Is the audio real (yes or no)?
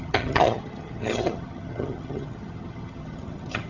no